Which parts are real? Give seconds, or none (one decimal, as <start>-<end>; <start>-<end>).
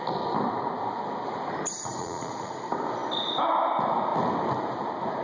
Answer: 0.0-2.0; 2.5-5.2